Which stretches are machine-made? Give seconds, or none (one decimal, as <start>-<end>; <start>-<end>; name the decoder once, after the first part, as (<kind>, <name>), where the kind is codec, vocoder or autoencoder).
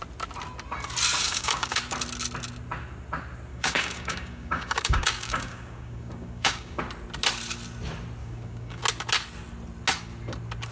1.2-1.8 (codec, DAC); 3.5-6.8; 8.2-8.8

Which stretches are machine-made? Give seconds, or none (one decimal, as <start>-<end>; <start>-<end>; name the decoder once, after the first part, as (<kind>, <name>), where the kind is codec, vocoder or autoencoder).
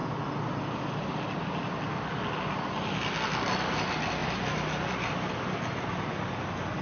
none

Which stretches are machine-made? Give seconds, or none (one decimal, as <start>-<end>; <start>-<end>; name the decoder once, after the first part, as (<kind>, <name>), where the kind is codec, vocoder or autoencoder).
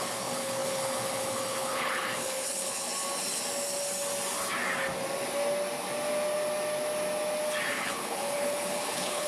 0.0-2.9 (codec, HILCodec); 7.7-9.3